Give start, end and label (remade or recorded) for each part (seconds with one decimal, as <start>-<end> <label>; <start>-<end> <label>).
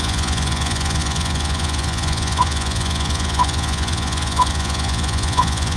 0.0-5.8 remade